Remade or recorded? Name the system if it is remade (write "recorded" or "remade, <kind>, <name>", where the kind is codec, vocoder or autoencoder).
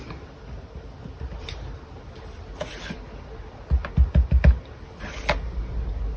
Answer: recorded